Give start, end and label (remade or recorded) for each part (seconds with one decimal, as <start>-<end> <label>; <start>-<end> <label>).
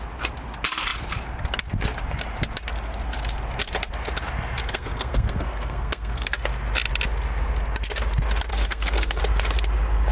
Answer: 0.0-4.6 recorded; 4.6-6.3 remade; 6.3-8.5 recorded; 8.5-9.2 remade; 9.2-10.1 recorded